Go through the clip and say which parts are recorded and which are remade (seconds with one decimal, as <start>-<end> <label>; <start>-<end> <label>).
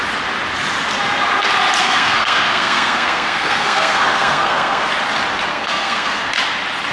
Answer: 0.0-1.8 recorded; 1.8-4.9 remade; 4.9-5.5 recorded; 5.5-6.3 remade; 6.3-6.9 recorded